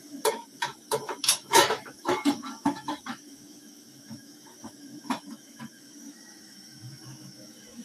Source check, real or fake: fake